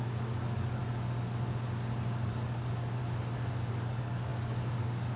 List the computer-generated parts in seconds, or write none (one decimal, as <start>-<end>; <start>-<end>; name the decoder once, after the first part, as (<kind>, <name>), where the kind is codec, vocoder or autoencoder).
0.0-0.8 (codec, DAC); 2.3-3.0; 3.7-5.2